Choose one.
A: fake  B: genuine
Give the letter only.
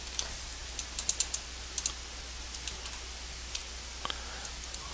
B